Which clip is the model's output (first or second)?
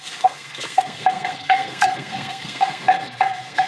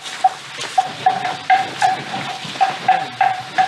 first